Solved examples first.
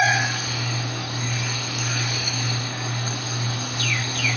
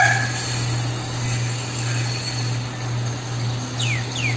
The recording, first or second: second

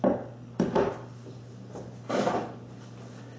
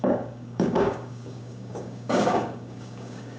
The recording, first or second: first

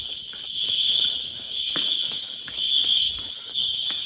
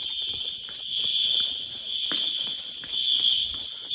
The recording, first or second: second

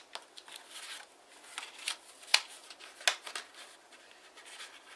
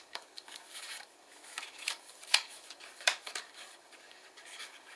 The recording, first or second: first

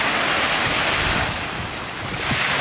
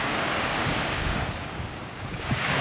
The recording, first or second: first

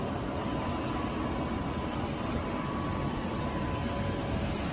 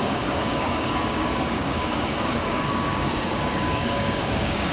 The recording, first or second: first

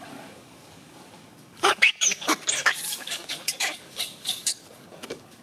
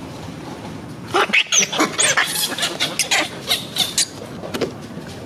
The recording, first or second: second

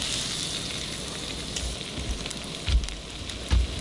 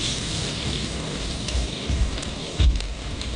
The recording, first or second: first